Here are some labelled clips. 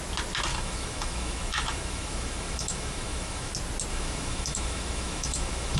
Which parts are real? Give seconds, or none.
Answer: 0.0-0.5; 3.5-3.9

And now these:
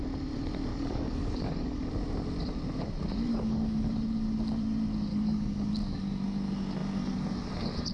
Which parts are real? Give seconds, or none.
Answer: 0.0-0.7; 1.9-3.3; 3.9-5.1; 5.7-7.9

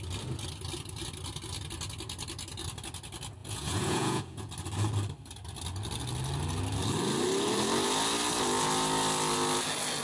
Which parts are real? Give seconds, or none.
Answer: 0.0-3.4; 4.5-10.0

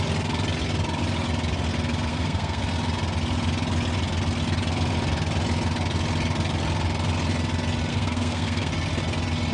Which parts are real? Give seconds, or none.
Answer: 0.0-2.1; 2.6-7.9; 8.7-9.5

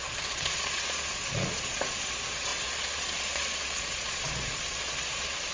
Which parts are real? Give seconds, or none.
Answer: none

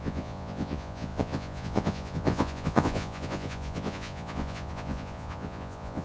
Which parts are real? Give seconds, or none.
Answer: none